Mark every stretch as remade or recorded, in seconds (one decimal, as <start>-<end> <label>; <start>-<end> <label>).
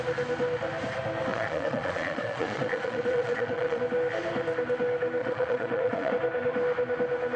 0.0-1.3 recorded; 1.3-3.8 remade; 3.8-5.2 recorded; 5.2-6.1 remade; 6.1-7.4 recorded